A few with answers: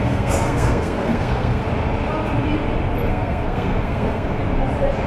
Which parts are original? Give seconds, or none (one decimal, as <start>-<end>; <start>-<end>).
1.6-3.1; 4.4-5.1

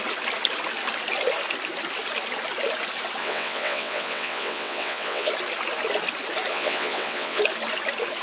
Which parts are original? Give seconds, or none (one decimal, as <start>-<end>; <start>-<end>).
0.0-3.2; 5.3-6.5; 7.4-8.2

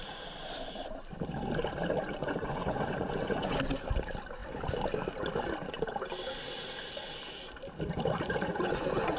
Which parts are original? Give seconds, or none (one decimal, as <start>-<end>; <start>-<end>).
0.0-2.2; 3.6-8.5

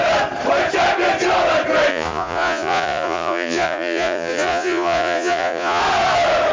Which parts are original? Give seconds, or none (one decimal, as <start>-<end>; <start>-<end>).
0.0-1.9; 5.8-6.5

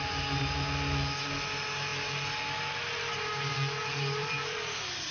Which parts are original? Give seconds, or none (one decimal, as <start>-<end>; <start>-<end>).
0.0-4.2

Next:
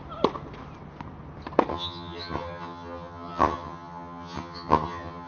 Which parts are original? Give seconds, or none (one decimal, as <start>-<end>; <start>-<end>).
0.0-1.7

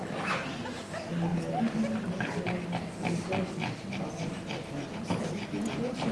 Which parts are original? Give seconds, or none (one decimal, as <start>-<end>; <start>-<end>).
0.0-6.1